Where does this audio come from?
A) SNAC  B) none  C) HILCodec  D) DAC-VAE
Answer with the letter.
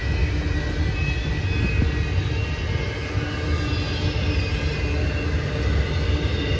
B